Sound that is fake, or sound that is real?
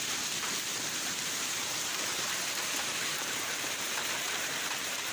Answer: fake